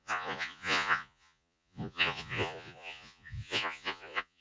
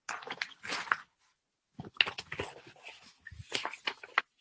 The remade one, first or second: first